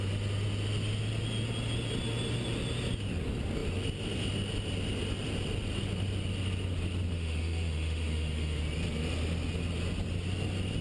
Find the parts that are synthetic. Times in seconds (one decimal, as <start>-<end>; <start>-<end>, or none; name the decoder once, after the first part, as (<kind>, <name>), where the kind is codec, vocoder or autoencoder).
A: 7.1-8.6 (autoencoder, DAC-VAE)